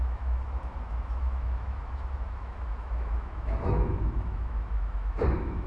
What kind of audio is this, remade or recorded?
remade